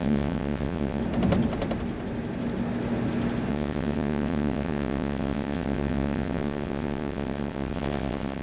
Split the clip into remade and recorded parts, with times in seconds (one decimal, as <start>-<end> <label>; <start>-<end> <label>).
0.0-1.0 remade; 1.0-3.5 recorded; 3.5-8.4 remade